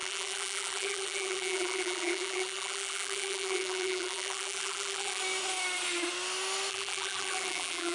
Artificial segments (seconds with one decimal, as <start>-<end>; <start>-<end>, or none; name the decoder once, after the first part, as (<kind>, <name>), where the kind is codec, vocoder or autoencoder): 0.0-5.2 (vocoder, BigVGAN v2); 6.7-7.9

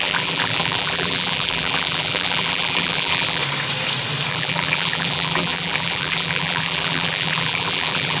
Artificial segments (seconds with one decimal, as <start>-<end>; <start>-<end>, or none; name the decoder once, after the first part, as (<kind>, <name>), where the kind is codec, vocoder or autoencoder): 0.0-3.4 (vocoder, BigVGAN v2); 4.3-8.2

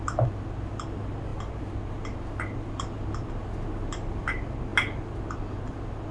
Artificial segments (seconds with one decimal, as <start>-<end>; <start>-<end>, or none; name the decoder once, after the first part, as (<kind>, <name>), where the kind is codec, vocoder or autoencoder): none

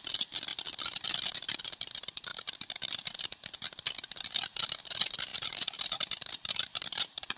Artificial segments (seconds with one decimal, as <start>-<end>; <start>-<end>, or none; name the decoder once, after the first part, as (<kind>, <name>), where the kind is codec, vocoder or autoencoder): 2.3-2.9 (vocoder, BigVGAN v2); 5.3-7.4

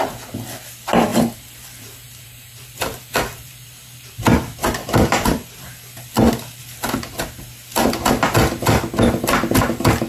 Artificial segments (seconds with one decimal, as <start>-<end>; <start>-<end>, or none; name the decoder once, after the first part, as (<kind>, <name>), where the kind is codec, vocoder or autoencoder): 1.1-6.0 (vocoder, BigVGAN v2)

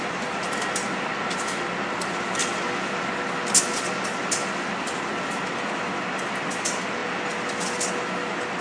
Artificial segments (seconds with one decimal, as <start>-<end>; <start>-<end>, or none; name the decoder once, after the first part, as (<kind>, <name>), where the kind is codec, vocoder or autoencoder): none

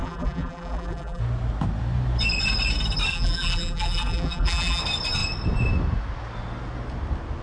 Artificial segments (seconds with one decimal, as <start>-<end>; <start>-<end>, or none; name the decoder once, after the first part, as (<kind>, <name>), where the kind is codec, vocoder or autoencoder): 0.0-1.2 (vocoder, BigVGAN v2); 3.1-4.8

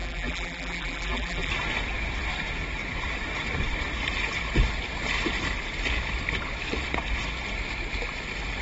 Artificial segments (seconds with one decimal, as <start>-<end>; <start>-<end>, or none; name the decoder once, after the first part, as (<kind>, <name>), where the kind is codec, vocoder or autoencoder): 0.0-1.5 (vocoder, BigVGAN v2)